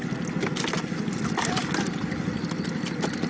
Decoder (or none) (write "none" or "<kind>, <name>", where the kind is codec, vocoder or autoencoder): none